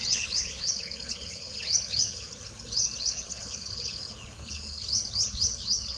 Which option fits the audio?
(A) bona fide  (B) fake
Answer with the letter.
B